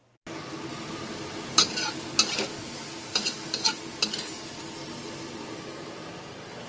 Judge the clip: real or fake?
real